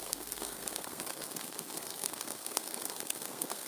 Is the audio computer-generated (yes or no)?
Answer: yes